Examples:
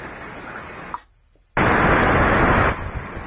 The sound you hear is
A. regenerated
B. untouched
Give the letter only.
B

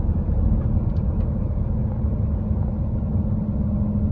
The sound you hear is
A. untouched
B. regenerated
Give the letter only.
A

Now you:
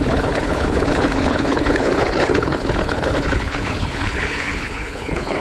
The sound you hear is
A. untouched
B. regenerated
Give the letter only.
B